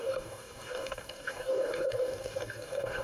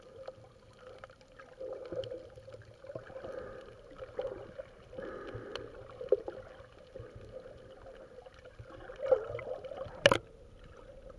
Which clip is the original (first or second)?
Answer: second